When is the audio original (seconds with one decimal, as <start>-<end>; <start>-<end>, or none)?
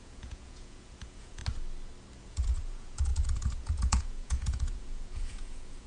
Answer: 1.4-2.2